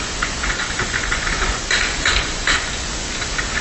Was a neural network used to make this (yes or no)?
yes